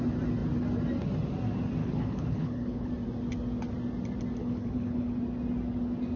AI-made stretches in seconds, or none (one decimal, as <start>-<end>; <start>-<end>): 1.8-2.9; 4.4-5.1